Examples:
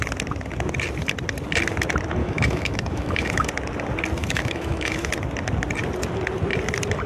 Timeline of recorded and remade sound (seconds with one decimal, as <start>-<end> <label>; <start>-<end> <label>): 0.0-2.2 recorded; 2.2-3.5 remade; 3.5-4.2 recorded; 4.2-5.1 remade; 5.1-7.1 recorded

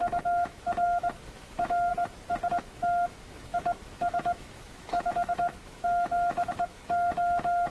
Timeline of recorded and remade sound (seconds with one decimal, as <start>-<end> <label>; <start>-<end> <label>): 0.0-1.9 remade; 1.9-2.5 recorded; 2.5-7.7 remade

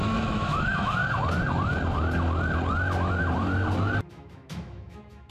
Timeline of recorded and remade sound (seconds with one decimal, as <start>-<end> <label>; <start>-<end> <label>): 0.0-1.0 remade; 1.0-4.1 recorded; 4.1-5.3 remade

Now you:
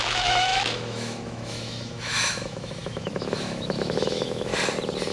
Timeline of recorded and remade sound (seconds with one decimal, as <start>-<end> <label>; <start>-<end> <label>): 0.0-4.5 remade; 4.5-5.1 recorded